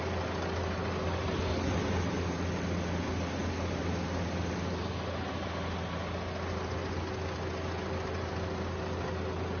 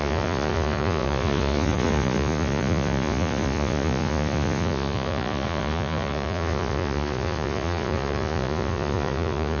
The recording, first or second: first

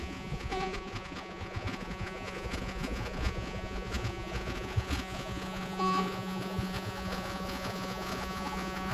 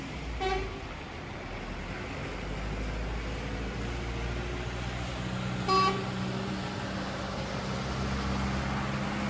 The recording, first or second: second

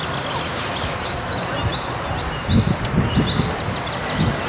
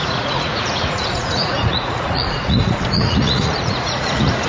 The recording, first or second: first